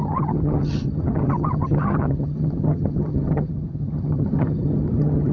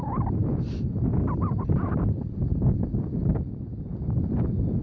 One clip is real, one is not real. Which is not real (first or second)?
first